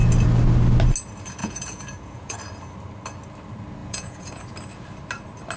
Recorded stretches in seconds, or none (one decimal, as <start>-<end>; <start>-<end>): 0.0-1.4; 2.4-3.8; 4.4-5.6